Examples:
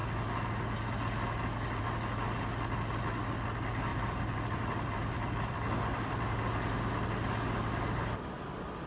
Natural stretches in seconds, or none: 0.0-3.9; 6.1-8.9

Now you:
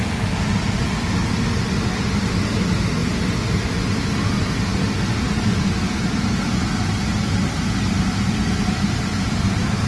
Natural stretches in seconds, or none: 0.0-9.9

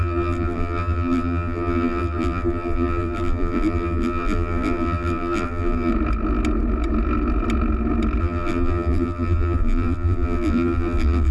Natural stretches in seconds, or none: 5.9-8.2